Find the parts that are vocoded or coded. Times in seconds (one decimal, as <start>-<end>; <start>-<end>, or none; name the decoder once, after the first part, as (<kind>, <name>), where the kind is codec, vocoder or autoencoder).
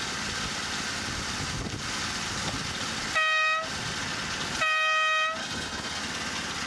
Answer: 5.4-6.0 (codec, HILCodec)